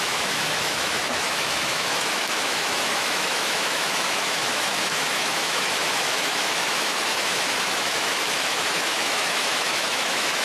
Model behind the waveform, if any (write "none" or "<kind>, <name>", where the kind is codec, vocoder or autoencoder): autoencoder, DAC-VAE